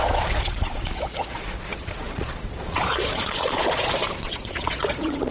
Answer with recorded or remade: remade